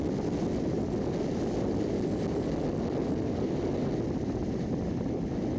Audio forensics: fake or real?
real